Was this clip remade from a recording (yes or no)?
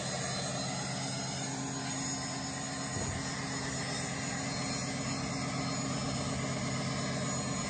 no